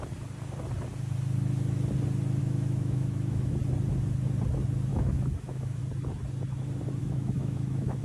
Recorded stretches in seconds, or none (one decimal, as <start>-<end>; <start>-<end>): 0.0-2.4; 3.5-4.9; 5.8-7.0

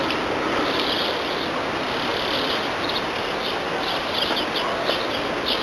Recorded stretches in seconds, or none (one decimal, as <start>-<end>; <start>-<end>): 0.0-5.6

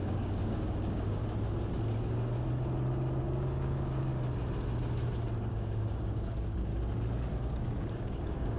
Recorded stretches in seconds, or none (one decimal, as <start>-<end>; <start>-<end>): 1.2-3.2; 4.1-5.5; 6.7-7.6

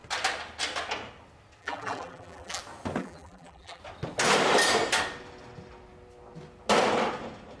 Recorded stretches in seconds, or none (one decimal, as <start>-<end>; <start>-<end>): 0.0-1.6; 2.6-3.0; 3.8-7.6

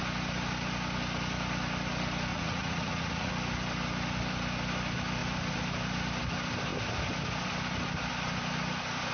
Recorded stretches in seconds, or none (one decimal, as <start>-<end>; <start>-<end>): 0.0-2.3; 3.3-9.1

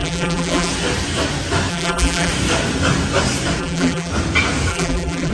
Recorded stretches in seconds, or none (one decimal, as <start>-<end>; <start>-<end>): 0.7-1.7; 2.3-3.6; 4.1-4.7